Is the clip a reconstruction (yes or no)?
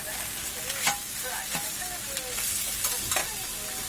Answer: no